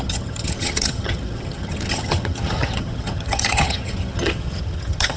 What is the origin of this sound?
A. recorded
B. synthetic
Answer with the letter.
B